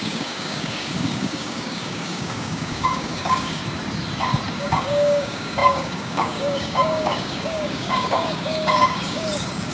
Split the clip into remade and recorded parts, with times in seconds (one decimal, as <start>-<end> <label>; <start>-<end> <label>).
0.0-3.6 remade; 3.6-4.6 recorded; 4.6-9.7 remade